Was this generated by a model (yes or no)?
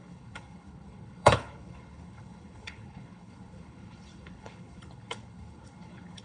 yes